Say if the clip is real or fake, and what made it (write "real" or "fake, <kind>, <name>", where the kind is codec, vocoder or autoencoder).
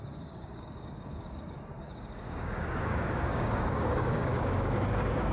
fake, codec, DAC